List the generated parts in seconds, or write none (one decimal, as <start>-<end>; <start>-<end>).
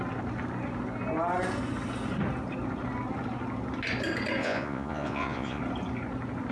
4.4-5.6